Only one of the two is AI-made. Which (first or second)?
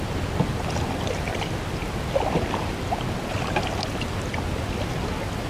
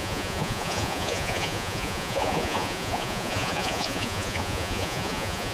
second